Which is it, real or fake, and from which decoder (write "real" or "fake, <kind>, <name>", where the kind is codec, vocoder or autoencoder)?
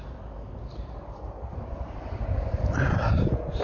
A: real